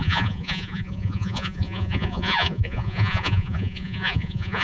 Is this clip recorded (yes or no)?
no